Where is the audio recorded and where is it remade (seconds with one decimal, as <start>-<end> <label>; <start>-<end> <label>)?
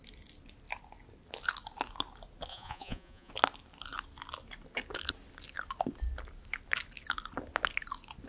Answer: 0.0-2.5 recorded; 2.5-3.3 remade; 3.3-8.3 recorded